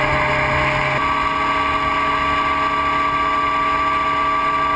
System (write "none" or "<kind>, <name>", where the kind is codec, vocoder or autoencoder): none